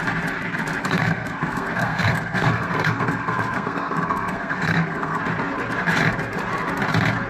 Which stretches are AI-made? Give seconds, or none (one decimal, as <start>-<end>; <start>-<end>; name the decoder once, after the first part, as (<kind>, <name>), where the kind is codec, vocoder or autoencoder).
0.8-5.2 (codec, SNAC)